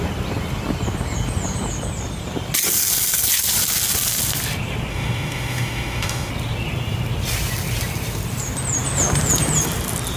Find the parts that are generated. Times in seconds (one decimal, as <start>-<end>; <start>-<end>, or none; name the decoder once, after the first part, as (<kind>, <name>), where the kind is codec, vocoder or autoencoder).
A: 4.9-6.3 (autoencoder, DAC-VAE)